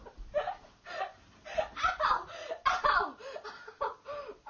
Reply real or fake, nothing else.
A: real